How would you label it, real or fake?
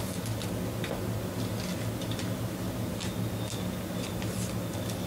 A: real